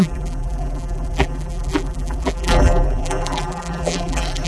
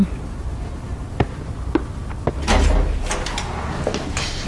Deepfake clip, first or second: first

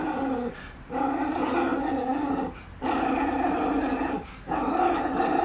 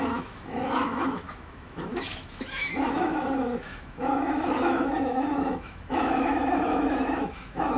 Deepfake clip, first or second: second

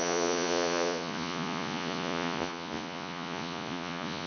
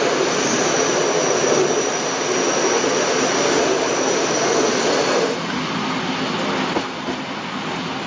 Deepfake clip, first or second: first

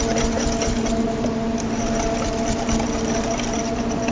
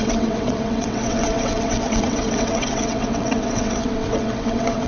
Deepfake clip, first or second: second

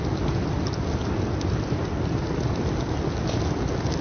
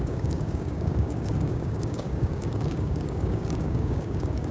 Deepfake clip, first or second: second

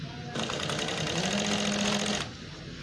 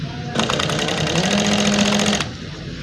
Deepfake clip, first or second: second